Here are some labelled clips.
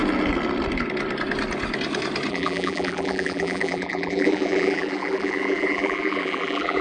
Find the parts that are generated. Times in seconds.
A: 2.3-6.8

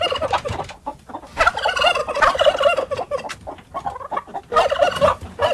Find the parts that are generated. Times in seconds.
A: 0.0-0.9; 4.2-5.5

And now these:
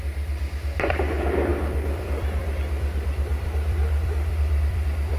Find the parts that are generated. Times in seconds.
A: 0.0-5.2

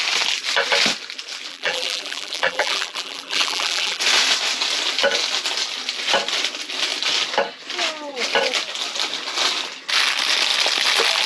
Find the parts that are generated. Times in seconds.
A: 1.5-4.0

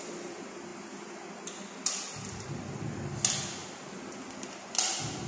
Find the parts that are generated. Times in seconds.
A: none